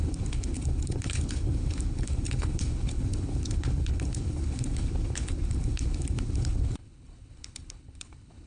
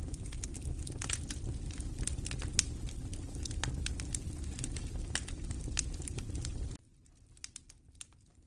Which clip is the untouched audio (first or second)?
second